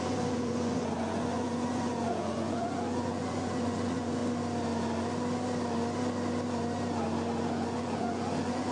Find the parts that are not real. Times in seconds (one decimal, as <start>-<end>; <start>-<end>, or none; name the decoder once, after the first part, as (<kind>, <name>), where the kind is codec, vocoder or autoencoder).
0.0-4.2 (vocoder, Vocos); 7.5-8.7